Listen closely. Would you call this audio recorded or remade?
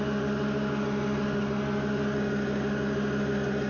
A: recorded